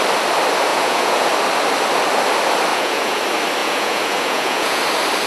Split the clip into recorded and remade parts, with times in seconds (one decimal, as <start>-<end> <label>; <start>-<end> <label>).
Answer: 0.0-0.7 recorded; 0.7-1.3 remade; 1.3-2.7 recorded; 2.7-3.2 remade; 3.2-3.6 recorded; 3.6-4.8 remade; 4.8-5.3 recorded